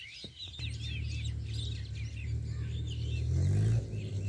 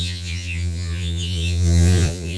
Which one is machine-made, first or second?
second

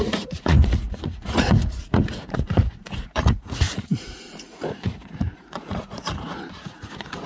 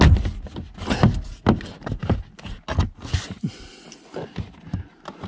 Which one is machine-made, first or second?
first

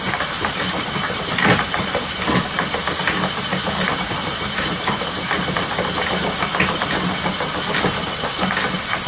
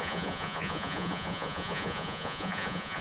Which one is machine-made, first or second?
second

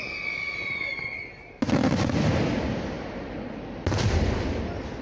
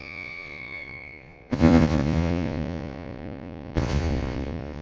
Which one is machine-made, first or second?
second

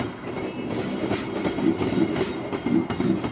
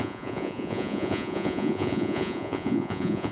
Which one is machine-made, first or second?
second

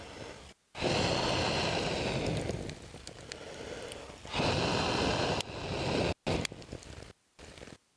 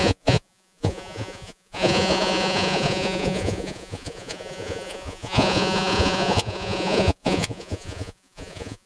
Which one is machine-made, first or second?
second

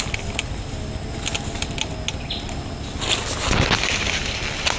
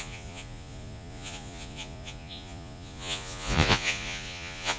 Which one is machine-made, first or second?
second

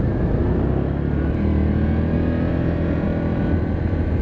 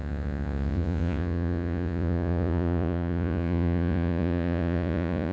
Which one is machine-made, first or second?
second